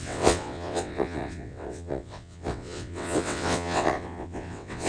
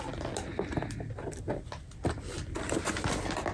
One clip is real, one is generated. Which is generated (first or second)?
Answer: first